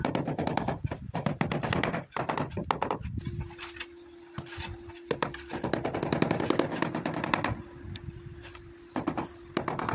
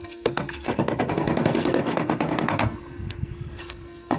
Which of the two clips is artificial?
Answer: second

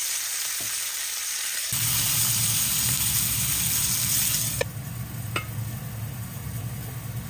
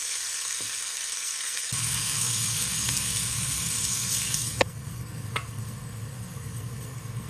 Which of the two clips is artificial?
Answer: second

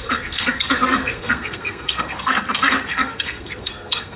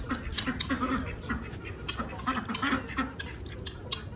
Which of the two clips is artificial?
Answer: first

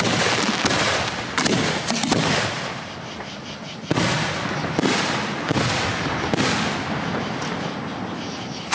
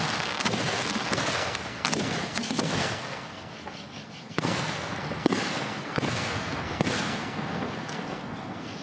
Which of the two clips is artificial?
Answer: second